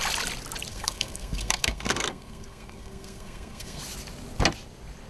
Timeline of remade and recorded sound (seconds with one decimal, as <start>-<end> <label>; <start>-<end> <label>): 0.0-0.7 recorded; 0.7-3.8 remade; 3.8-5.1 recorded

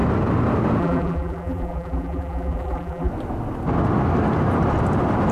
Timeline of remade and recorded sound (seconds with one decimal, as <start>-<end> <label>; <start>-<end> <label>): 0.0-0.8 recorded; 0.8-3.1 remade; 3.1-5.3 recorded

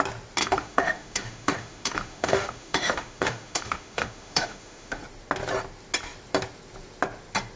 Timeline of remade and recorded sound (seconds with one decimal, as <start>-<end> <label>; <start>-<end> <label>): 0.0-0.4 recorded; 0.4-5.0 remade; 5.0-7.6 recorded

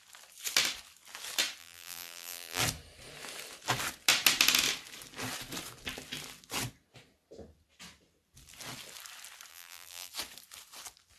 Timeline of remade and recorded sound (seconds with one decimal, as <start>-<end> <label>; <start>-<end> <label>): 0.0-1.6 recorded; 1.6-2.6 remade; 2.6-9.5 recorded; 9.5-10.1 remade; 10.1-11.2 recorded

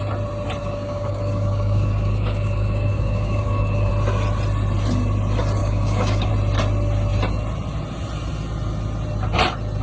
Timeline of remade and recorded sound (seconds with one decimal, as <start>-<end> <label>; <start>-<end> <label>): 0.0-0.6 recorded; 0.6-3.9 remade; 3.9-5.6 recorded; 5.6-6.3 remade; 6.3-9.8 recorded

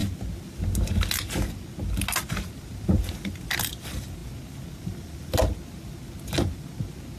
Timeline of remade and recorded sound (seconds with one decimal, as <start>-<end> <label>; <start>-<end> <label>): 0.0-7.2 recorded

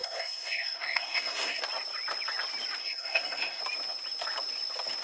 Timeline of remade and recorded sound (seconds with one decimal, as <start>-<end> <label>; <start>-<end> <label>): 0.0-1.6 remade; 1.6-2.8 recorded; 2.8-3.6 remade; 3.6-5.0 recorded

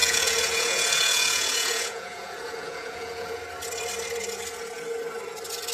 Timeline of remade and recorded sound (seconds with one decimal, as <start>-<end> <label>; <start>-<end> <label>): 0.0-3.4 remade; 3.4-5.7 recorded